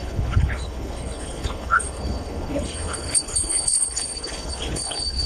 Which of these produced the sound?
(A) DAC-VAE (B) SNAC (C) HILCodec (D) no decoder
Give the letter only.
C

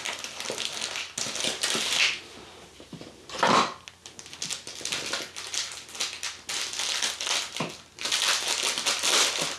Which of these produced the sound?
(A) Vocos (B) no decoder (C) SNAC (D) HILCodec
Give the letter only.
B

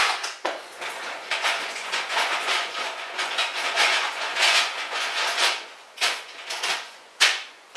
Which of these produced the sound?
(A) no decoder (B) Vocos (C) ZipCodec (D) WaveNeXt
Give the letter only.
B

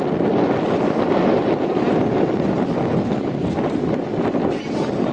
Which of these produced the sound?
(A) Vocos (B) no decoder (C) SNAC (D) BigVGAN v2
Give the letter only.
B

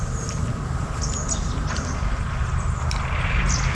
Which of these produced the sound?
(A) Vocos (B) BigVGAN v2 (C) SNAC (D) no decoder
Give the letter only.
D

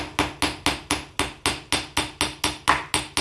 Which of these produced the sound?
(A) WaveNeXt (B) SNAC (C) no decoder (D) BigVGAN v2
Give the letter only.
C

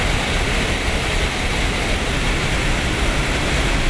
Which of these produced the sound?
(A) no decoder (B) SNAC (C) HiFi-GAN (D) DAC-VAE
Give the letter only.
A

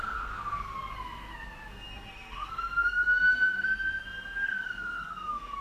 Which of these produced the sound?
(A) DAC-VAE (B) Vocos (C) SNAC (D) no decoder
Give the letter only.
C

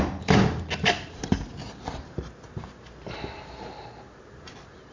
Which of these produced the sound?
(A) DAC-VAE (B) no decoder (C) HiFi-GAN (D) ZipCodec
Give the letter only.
B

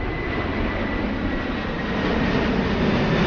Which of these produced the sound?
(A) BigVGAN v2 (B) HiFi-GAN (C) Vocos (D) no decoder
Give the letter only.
D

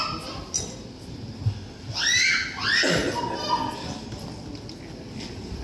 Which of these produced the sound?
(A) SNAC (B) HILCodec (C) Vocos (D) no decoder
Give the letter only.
D